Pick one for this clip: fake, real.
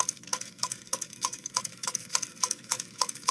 fake